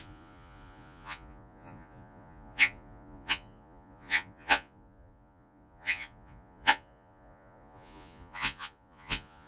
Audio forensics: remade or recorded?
remade